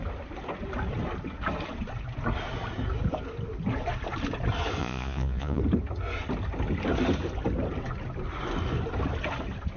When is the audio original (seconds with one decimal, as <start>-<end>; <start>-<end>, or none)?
0.0-4.8; 5.6-9.8